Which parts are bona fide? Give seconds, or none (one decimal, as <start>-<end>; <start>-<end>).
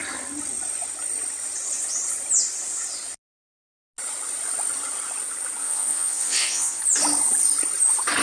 0.0-5.6; 6.8-8.2